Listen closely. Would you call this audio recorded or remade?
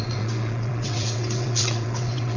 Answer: remade